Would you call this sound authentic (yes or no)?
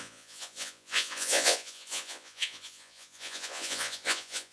no